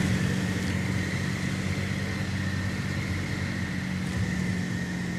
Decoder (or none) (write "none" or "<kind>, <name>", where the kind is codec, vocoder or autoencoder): none